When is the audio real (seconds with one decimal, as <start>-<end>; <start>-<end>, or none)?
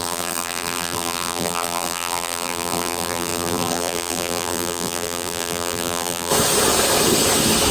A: 6.3-7.7